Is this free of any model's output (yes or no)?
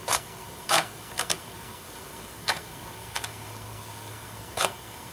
no